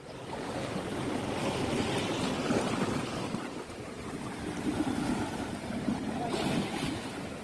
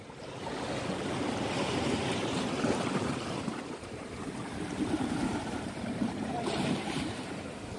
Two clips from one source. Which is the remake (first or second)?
second